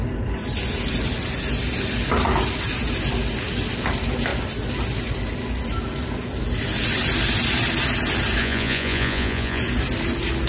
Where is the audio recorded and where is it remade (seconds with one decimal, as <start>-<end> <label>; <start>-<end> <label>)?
0.0-8.4 recorded; 8.4-9.6 remade; 9.6-10.5 recorded